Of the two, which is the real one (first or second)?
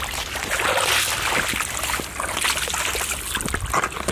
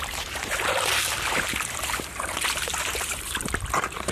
first